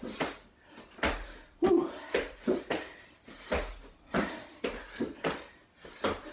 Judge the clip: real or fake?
real